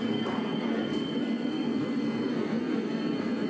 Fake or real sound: fake